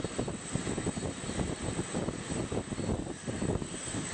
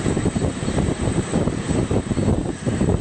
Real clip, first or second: first